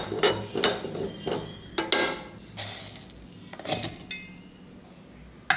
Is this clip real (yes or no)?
yes